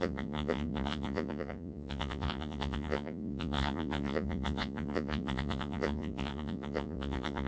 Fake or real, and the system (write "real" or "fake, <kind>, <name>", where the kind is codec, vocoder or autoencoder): fake, vocoder, Vocos